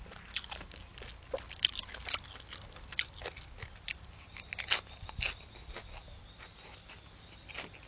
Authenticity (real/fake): real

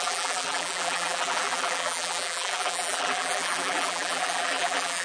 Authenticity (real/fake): fake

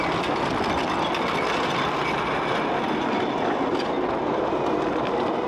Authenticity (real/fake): real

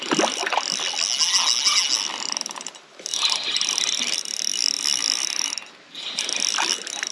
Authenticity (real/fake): real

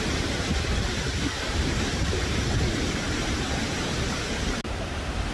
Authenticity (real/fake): fake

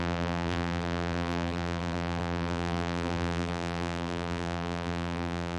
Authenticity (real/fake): fake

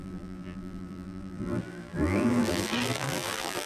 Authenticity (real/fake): fake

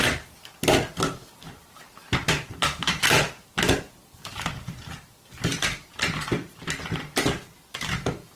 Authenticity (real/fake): real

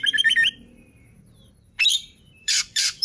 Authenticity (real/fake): fake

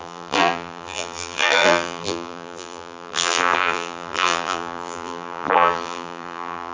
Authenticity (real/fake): fake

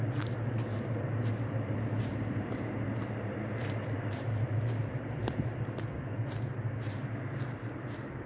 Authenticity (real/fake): fake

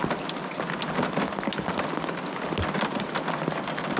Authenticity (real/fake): real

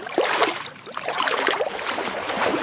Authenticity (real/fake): fake